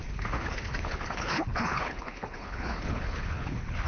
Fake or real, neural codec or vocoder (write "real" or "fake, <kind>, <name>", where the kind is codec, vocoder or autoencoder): fake, codec, HILCodec